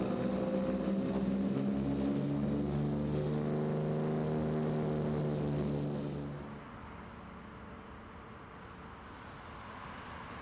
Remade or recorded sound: recorded